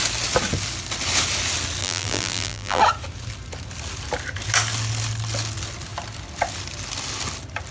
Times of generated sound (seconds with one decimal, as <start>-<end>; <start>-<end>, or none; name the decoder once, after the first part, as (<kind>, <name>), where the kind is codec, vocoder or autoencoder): 1.8-2.8 (vocoder, BigVGAN v2)